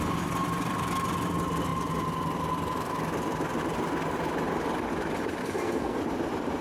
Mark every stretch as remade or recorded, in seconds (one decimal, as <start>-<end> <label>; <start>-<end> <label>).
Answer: 0.0-5.4 recorded; 5.4-6.0 remade; 6.0-6.6 recorded